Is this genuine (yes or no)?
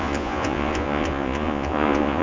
no